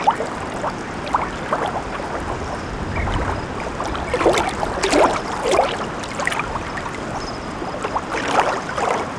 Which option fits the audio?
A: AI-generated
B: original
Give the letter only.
B